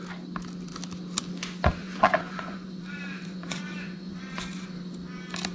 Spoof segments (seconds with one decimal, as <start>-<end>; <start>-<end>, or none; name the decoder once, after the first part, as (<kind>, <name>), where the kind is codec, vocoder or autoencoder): 1.8-4.7 (vocoder, Vocos)